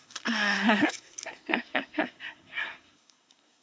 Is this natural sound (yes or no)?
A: no